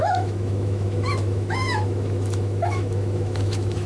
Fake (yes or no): yes